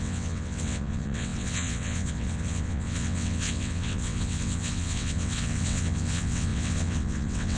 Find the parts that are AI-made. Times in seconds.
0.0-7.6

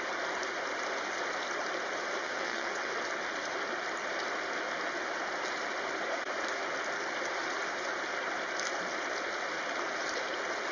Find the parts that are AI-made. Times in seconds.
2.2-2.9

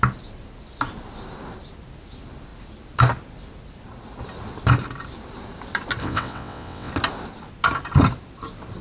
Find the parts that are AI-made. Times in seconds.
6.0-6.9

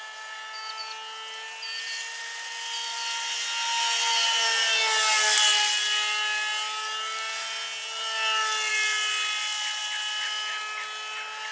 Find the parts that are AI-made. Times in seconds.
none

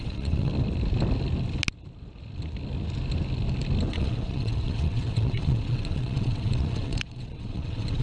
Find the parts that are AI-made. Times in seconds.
0.0-0.5; 3.9-8.0